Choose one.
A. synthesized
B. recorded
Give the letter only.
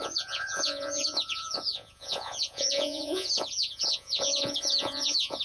A